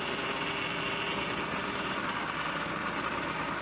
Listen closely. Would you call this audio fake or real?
real